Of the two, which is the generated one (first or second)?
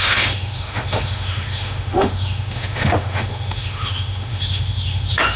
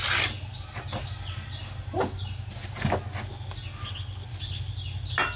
first